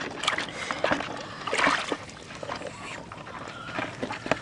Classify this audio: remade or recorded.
recorded